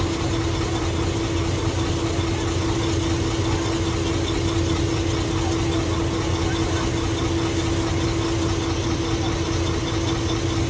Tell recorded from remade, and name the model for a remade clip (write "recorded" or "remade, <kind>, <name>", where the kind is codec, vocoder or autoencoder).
recorded